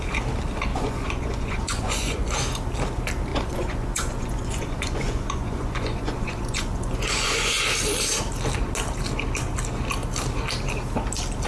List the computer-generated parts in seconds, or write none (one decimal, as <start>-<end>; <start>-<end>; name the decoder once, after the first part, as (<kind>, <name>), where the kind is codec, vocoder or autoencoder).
0.7-2.3 (vocoder, Vocos); 3.3-7.6